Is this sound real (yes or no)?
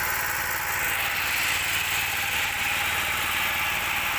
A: yes